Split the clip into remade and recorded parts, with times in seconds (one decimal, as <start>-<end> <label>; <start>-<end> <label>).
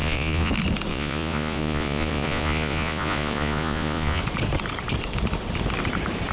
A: 0.0-0.5 remade; 0.5-0.9 recorded; 0.9-4.2 remade; 4.2-6.3 recorded